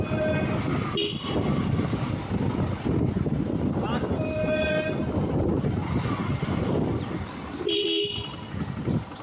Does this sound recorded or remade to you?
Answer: recorded